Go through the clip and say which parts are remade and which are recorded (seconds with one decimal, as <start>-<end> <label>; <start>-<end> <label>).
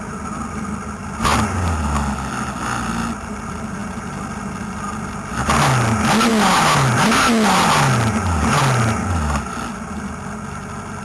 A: 0.0-11.0 recorded